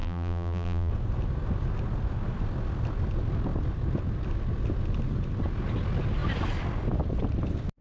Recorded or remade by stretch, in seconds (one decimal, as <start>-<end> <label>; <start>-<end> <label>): 0.0-0.9 remade; 0.9-7.8 recorded

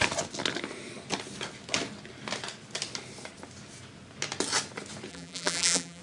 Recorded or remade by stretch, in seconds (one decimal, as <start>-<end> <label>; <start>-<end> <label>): 0.0-5.1 recorded; 5.1-6.0 remade

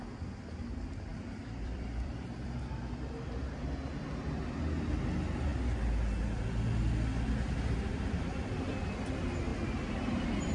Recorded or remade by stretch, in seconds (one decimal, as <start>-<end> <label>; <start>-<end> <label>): 0.0-1.1 recorded; 1.1-2.6 remade; 2.6-10.5 recorded

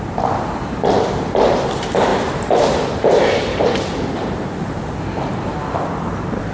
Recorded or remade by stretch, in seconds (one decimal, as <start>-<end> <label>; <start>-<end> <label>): 0.0-2.1 recorded; 2.1-4.8 remade; 4.8-6.5 recorded

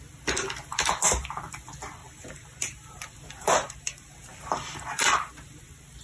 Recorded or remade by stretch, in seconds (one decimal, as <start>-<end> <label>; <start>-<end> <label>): 0.0-2.0 recorded; 2.0-5.6 remade; 5.6-6.0 recorded

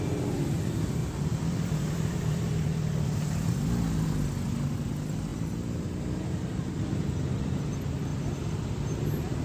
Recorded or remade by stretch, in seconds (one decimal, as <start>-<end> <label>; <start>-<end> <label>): 0.0-1.0 recorded; 1.0-3.5 remade; 3.5-5.3 recorded; 5.3-5.9 remade; 5.9-9.4 recorded

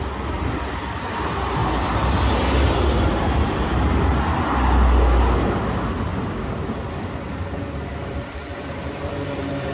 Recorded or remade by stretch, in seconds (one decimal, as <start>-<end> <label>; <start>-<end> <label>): 0.0-1.6 remade; 1.6-3.0 recorded; 3.0-3.9 remade; 3.9-5.2 recorded; 5.2-6.1 remade; 6.1-7.9 recorded; 7.9-9.7 remade

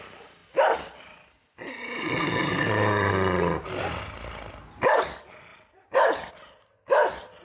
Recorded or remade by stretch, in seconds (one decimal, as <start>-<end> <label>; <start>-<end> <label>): 0.0-2.4 recorded; 2.4-3.1 remade; 3.1-5.5 recorded; 5.5-6.3 remade; 6.3-7.4 recorded